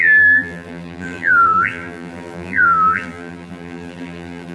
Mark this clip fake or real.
fake